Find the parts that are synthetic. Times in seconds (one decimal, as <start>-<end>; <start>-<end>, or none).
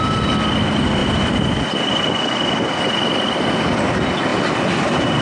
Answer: none